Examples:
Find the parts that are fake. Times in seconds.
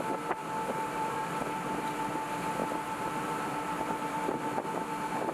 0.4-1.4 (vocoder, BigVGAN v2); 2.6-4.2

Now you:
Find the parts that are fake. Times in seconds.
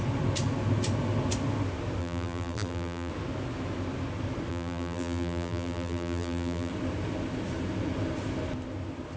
2.0-3.1 (vocoder, BigVGAN v2); 4.5-6.7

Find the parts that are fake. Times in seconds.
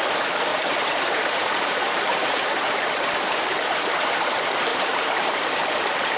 0.5-4.2 (vocoder, BigVGAN v2); 4.7-5.6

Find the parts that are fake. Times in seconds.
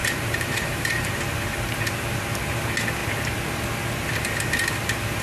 0.0-1.2 (vocoder, BigVGAN v2)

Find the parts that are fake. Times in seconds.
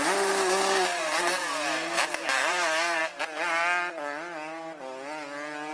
0.9-3.0 (vocoder, BigVGAN v2)